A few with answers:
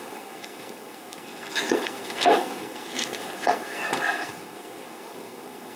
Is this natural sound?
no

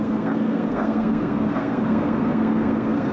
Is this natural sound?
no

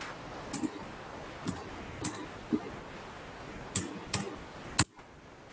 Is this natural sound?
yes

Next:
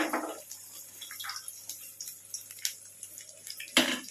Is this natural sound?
yes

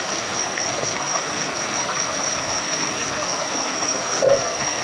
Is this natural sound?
no